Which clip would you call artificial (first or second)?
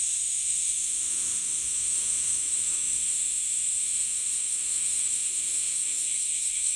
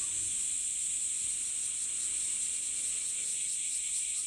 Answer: first